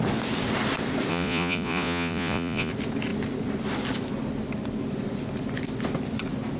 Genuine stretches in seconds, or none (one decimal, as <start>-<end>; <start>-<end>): 0.0-1.1; 2.7-6.6